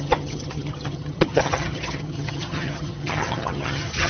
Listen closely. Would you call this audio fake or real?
fake